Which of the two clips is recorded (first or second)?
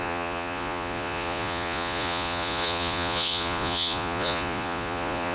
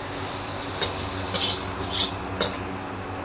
second